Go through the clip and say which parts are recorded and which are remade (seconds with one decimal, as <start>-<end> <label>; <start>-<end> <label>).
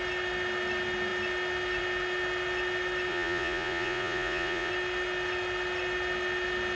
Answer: 0.0-3.1 recorded; 3.1-4.7 remade; 4.7-6.7 recorded